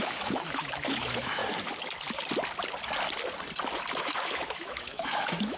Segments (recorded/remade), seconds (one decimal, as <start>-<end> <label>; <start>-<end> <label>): 0.0-1.4 remade; 1.4-4.0 recorded; 4.0-5.6 remade

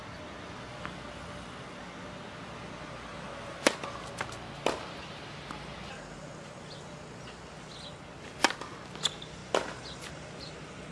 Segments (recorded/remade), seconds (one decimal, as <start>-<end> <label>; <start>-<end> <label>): 0.0-10.9 recorded

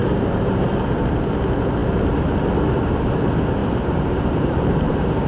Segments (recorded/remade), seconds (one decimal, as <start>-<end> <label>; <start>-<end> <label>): 0.0-0.7 remade; 0.7-3.6 recorded; 3.6-5.3 remade